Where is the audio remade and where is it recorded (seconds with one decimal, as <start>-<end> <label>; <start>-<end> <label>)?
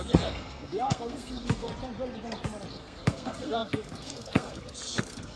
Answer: 0.0-1.7 remade; 1.7-2.7 recorded; 2.7-5.4 remade